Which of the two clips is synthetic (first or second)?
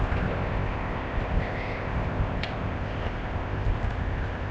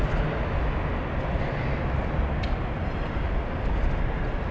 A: first